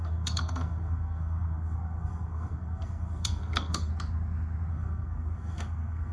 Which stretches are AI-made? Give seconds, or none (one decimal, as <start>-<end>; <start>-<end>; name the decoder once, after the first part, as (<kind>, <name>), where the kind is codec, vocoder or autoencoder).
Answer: 0.0-3.9 (codec, SNAC); 4.7-6.1